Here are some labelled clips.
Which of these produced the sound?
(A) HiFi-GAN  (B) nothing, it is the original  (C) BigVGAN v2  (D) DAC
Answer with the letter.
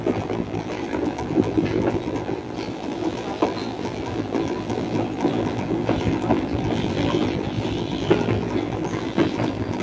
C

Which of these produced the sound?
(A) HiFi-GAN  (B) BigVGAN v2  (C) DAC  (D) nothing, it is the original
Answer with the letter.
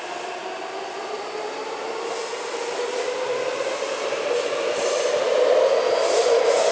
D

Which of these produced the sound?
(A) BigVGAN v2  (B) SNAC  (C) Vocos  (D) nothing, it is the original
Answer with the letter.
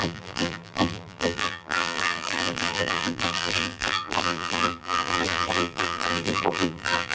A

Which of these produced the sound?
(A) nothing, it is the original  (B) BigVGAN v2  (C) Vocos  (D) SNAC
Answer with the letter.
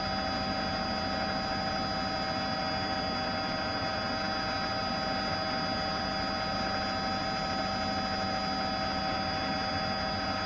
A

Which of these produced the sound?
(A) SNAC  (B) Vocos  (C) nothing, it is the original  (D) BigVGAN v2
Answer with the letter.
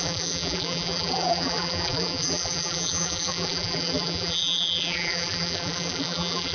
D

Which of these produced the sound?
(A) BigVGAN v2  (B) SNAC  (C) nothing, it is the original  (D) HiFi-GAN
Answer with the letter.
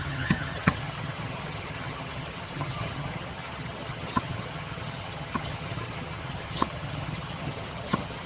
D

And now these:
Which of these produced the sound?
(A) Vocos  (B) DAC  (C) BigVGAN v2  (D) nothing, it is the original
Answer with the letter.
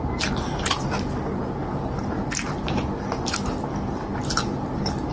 D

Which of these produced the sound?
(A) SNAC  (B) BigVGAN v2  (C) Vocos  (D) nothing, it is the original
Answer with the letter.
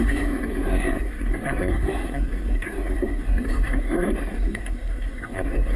A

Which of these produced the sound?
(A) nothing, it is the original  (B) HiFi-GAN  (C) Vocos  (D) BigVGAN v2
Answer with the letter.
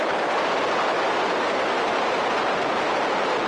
D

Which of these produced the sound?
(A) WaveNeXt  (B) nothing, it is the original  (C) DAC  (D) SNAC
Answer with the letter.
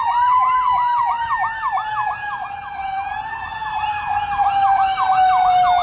B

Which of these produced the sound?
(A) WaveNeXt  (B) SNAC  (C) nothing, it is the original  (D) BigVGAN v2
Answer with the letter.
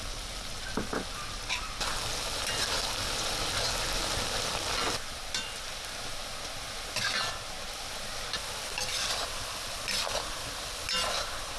C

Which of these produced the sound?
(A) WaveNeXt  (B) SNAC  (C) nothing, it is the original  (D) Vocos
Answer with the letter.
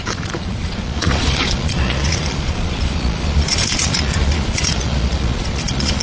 D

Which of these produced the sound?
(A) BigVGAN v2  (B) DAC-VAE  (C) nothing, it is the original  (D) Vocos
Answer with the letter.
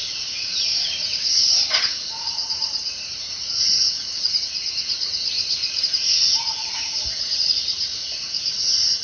D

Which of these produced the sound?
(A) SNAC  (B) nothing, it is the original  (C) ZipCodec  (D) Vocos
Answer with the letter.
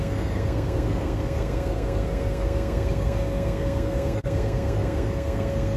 A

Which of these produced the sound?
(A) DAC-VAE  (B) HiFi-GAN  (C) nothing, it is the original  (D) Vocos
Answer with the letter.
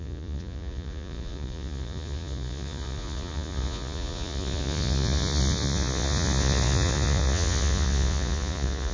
D